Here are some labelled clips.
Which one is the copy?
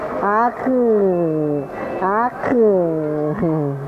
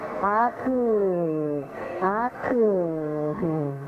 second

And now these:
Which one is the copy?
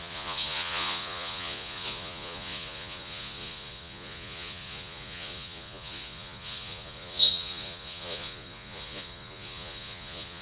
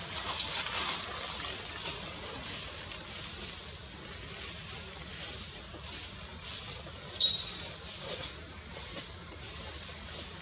first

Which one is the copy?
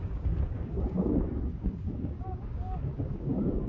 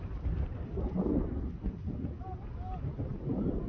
first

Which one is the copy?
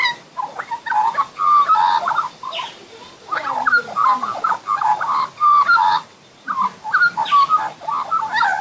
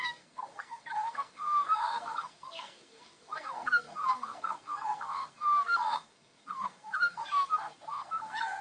second